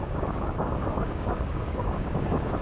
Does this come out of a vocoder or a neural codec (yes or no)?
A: yes